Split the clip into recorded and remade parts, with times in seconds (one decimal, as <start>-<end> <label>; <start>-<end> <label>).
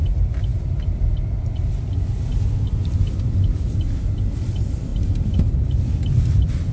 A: 0.0-6.7 recorded